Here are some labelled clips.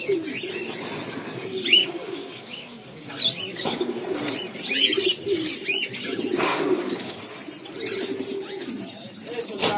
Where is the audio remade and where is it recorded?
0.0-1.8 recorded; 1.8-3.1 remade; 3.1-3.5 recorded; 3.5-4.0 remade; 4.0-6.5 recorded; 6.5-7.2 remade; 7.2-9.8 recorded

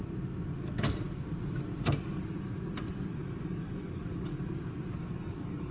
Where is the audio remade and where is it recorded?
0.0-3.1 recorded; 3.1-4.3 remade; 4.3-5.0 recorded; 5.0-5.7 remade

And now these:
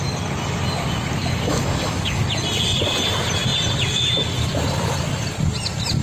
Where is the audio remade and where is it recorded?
0.0-1.2 recorded; 1.2-2.2 remade; 2.2-6.0 recorded